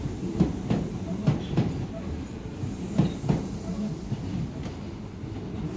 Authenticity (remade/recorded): recorded